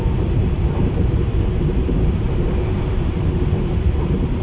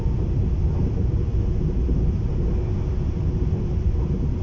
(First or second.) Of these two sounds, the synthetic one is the first